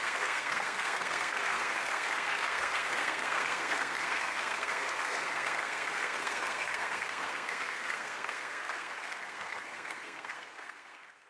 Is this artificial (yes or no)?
yes